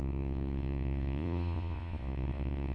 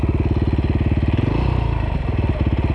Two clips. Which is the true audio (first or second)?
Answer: second